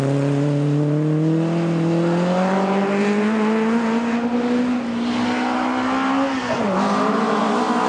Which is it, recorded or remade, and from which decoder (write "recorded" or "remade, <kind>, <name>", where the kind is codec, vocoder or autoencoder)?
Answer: recorded